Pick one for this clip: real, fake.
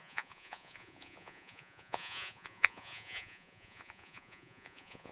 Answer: fake